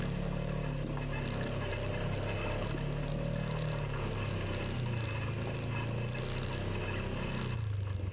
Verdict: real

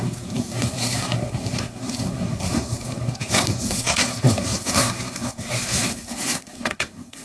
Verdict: fake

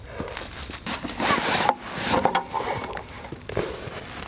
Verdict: real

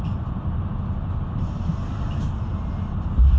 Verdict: real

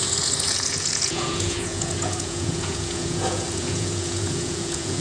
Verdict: fake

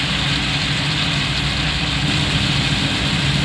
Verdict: real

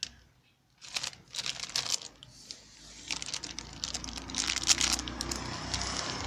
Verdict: real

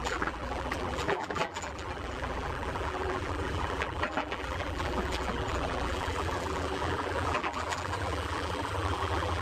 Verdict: fake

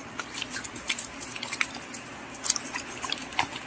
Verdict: real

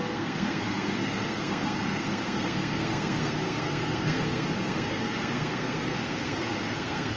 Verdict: fake